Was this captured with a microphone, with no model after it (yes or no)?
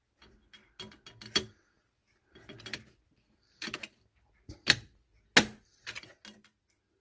yes